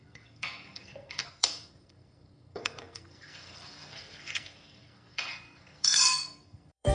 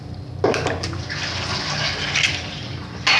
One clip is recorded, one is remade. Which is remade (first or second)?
first